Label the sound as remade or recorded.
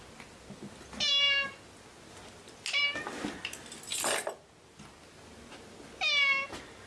recorded